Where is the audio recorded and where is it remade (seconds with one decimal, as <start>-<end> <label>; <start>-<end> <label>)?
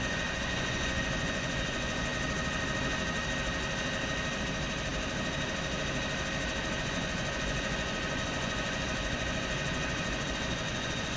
0.0-2.1 remade; 2.1-6.8 recorded; 6.8-11.2 remade